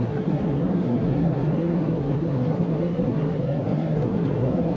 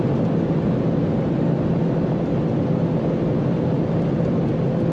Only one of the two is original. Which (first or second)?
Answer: second